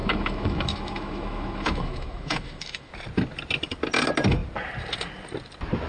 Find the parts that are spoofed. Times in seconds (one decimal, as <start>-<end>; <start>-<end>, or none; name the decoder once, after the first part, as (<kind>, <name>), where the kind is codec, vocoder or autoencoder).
0.0-2.9 (autoencoder, DAC-VAE)